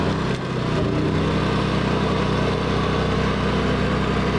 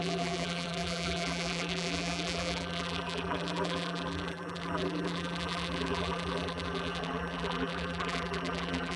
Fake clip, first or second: second